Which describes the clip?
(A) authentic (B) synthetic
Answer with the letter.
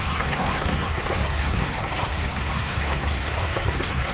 B